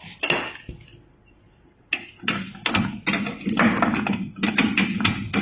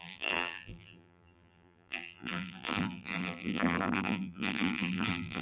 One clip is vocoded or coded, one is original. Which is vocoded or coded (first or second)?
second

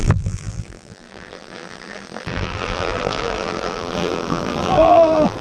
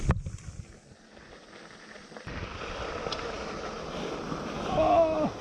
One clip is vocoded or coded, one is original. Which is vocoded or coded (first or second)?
first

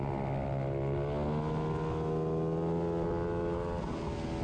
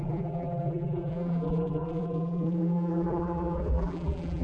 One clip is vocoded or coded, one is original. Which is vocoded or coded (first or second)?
second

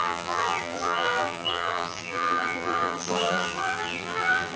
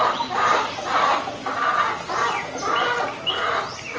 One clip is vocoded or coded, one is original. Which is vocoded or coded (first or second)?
first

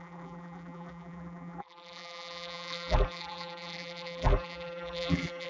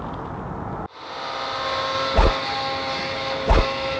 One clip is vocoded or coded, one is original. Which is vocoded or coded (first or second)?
first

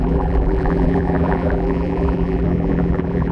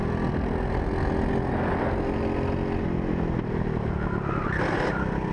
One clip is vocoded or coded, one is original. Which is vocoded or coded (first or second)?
first